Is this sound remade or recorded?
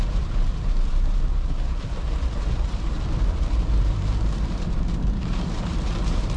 remade